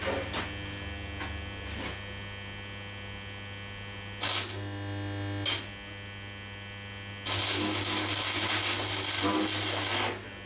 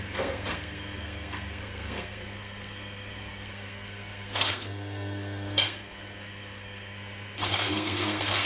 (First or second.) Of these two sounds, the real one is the first